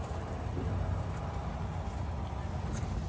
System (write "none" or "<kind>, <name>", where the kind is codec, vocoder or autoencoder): none